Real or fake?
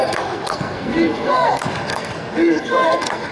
fake